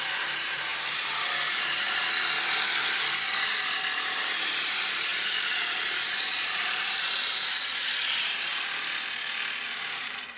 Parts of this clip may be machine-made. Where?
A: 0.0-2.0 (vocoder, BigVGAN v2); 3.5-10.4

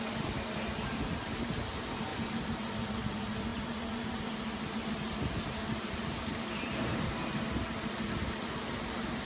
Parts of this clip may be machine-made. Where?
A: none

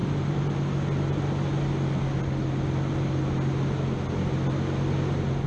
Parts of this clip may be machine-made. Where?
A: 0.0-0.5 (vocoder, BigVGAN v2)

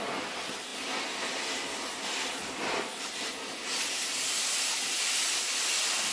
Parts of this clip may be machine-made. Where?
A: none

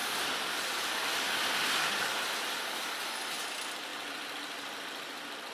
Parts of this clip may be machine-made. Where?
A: 0.0-1.6 (vocoder, BigVGAN v2); 3.9-5.5